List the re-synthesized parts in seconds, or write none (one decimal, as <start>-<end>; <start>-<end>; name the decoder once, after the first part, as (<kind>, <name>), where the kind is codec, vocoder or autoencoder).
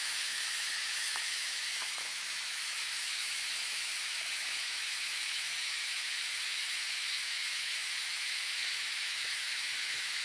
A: 0.0-10.2 (autoencoder, DAC-VAE)